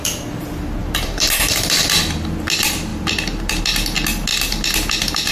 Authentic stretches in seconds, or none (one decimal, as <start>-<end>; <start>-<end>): 0.0-0.8; 2.0-2.9; 3.6-5.3